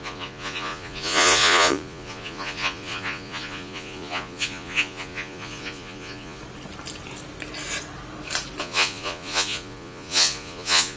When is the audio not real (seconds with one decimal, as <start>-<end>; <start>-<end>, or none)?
0.0-6.4; 8.6-11.0